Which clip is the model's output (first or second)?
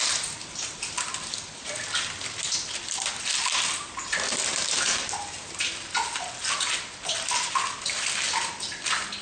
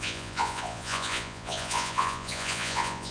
second